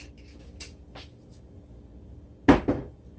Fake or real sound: real